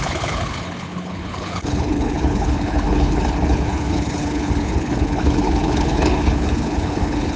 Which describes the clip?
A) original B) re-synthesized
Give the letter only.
B